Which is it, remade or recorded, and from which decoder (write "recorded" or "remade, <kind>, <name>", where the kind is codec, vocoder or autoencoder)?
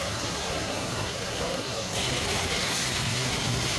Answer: remade, codec, SNAC